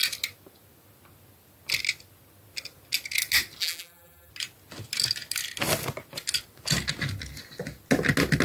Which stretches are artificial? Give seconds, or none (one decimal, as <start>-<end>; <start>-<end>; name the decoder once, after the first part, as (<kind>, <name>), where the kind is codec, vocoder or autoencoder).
3.6-4.3 (vocoder, BigVGAN v2)